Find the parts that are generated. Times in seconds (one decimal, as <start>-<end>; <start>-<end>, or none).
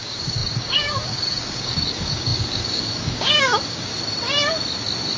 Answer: 0.0-3.9